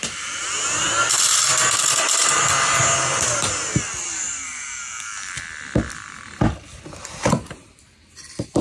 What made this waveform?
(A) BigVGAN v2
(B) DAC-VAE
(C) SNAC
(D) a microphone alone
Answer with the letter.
A